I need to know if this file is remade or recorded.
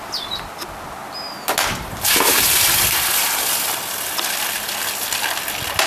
recorded